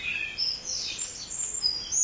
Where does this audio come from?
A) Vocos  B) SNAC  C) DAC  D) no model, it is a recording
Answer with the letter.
D